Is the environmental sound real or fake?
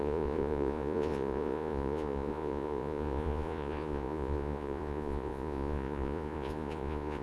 fake